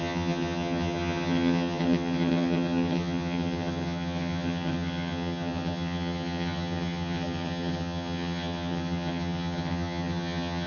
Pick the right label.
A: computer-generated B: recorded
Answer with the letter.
A